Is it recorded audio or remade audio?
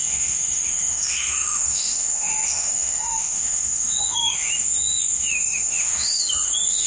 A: remade